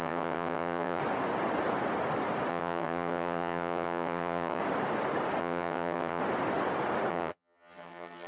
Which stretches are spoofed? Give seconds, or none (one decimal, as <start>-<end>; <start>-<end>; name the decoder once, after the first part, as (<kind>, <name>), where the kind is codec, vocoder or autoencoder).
0.0-1.0 (vocoder, HiFi-GAN); 2.5-4.6; 5.4-6.2; 7.1-8.3